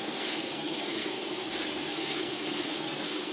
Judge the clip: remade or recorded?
remade